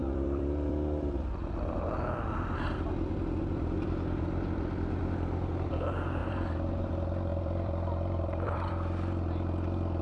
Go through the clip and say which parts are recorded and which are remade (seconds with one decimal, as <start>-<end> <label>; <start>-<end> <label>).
0.0-5.0 remade; 5.0-6.2 recorded; 6.2-6.8 remade; 6.8-7.3 recorded; 7.3-8.7 remade; 8.7-10.0 recorded